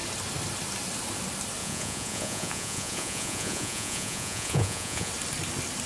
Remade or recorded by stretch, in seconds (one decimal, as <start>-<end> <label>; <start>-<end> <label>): 0.0-1.6 recorded; 1.6-5.1 remade; 5.1-5.9 recorded